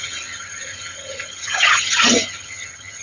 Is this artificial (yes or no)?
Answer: yes